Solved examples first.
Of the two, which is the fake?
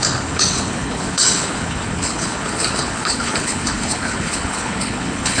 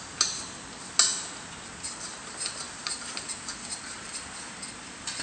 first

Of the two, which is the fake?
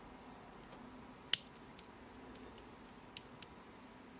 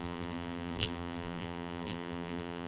second